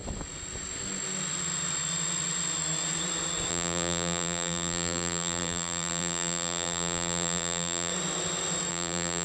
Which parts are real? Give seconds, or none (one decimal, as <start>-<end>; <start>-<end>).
0.0-3.5; 7.9-8.7